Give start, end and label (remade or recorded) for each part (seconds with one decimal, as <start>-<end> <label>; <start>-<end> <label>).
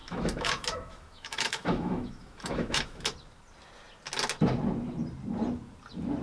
0.0-3.0 remade; 3.0-6.2 recorded